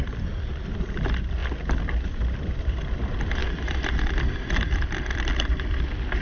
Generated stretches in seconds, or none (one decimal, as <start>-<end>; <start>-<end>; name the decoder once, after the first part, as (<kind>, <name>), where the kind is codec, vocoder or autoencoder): 0.0-1.4 (vocoder, BigVGAN v2); 2.6-6.2